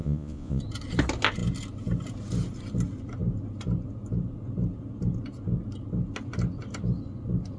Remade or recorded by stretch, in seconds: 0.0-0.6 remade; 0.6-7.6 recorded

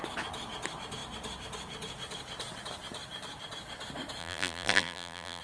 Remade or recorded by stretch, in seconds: 0.0-4.2 recorded; 4.2-5.4 remade